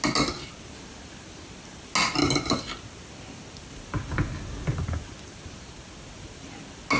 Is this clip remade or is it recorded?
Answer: recorded